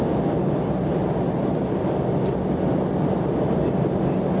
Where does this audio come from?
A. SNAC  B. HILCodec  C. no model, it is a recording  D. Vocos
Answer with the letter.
C